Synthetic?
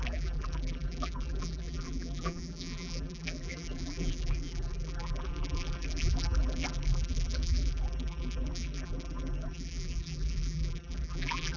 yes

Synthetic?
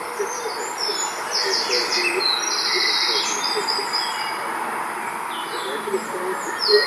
no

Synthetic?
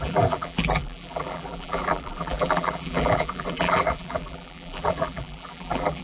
yes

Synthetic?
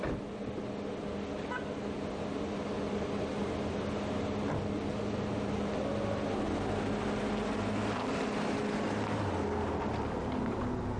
no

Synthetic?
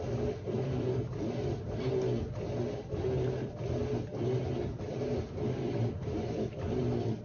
no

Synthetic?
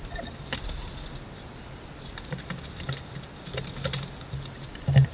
no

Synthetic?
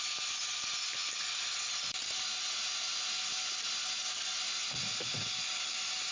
no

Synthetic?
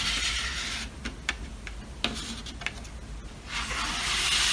no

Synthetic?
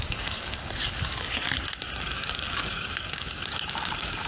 yes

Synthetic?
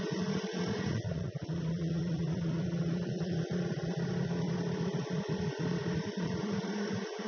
yes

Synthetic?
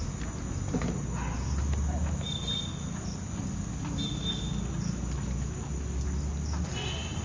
no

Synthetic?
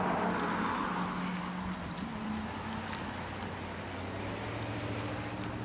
no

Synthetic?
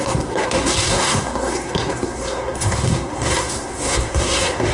yes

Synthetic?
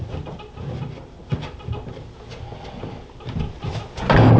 no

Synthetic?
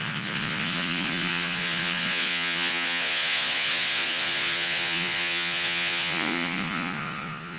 yes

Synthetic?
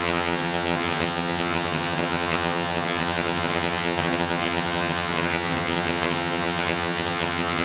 yes